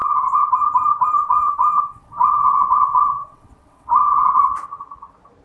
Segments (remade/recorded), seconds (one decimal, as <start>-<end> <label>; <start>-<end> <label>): 0.0-0.5 remade; 0.5-1.2 recorded; 1.2-4.4 remade; 4.4-5.4 recorded